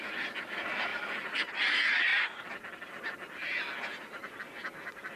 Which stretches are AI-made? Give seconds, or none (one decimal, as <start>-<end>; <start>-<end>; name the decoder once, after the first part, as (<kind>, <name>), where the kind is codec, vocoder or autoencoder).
0.9-1.5 (vocoder, BigVGAN v2); 2.1-2.9